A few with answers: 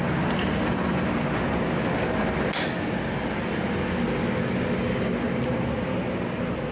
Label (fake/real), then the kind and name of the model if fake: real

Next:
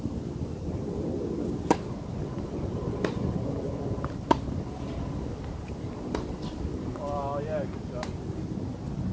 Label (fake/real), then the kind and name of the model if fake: real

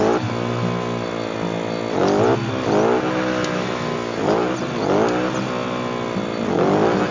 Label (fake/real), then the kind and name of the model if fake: real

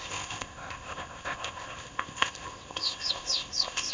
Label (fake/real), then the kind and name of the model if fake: fake, codec, ZipCodec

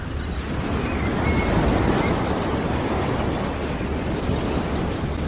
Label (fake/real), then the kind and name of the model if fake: real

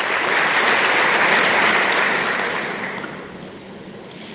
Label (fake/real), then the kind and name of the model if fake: real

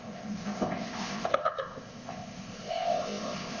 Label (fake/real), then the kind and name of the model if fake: fake, codec, ZipCodec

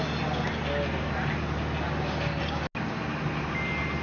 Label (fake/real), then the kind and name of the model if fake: real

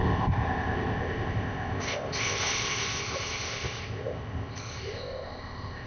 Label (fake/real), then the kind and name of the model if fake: fake, codec, ZipCodec